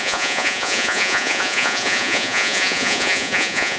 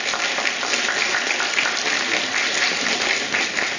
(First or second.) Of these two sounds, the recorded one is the second